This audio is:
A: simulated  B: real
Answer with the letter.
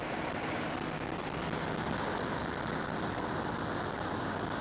B